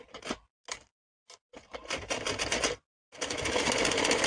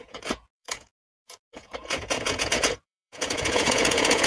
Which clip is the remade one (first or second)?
second